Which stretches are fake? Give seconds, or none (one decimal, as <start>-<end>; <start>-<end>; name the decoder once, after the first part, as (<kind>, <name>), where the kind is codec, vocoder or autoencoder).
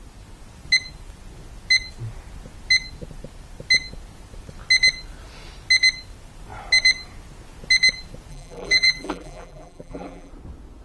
8.3-10.3 (vocoder, BigVGAN v2)